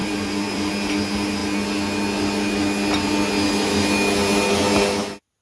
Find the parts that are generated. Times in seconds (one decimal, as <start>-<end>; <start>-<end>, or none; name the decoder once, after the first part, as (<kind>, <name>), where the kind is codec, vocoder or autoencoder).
0.0-0.7 (vocoder, BigVGAN v2)